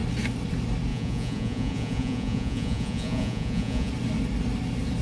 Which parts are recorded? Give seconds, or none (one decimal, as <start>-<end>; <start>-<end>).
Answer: 0.0-0.9; 3.9-5.0